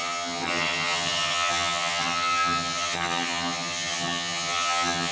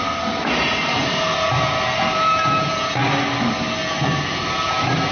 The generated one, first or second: first